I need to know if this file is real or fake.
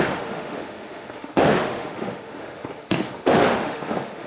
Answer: fake